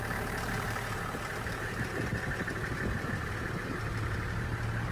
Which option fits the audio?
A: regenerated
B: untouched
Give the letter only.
A